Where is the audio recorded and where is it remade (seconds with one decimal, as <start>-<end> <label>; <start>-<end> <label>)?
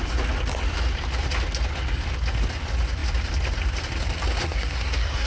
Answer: 0.0-4.4 recorded; 4.4-5.3 remade